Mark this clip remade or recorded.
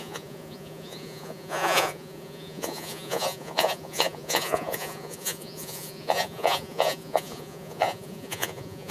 remade